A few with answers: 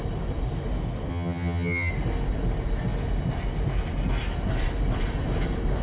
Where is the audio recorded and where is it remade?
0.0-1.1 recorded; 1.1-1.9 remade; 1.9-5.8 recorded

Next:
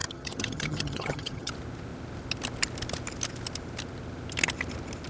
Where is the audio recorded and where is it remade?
0.0-1.5 remade; 1.5-5.1 recorded